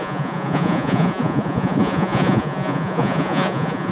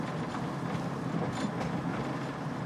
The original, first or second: second